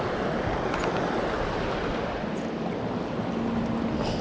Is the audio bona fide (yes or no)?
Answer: yes